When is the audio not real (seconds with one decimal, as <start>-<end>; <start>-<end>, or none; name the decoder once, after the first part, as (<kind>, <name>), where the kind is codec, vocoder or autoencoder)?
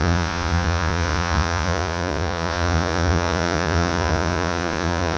0.0-5.2 (vocoder, Vocos)